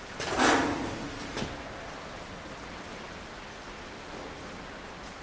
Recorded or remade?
recorded